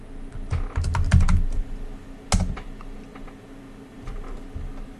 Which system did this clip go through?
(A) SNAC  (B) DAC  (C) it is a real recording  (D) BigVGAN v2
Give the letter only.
C